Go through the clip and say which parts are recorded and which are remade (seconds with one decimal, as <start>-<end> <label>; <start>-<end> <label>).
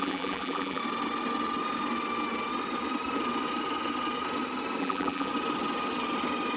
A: 0.0-0.8 remade; 0.8-4.8 recorded; 4.8-5.3 remade; 5.3-6.6 recorded